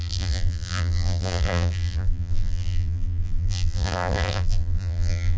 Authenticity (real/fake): fake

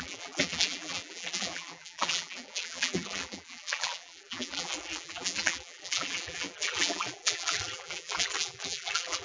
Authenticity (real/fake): fake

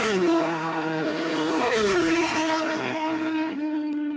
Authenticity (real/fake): fake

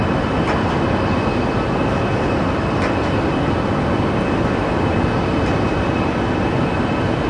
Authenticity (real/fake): real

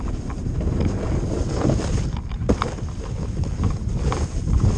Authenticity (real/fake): real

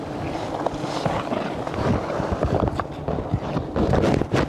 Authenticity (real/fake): fake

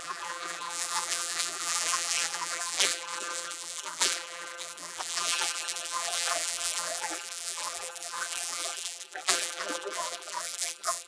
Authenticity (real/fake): fake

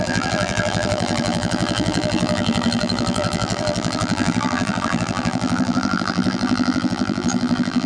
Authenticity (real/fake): fake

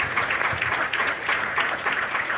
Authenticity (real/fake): fake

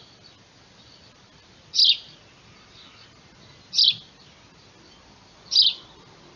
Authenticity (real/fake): real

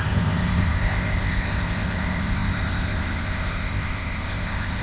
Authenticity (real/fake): fake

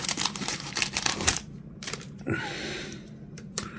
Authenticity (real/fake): fake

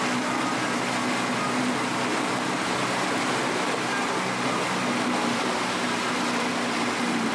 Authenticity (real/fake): real